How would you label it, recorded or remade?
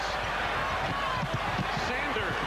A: recorded